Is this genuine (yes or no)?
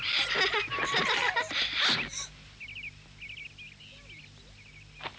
yes